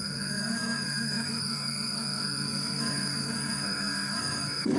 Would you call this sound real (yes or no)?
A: no